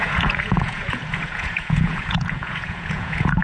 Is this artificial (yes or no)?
yes